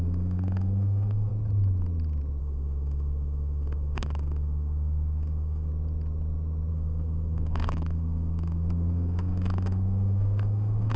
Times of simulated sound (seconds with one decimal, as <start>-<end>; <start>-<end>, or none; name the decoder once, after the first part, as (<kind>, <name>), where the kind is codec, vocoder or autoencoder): 0.0-1.3 (autoencoder, DAC-VAE); 2.4-5.7; 6.7-11.0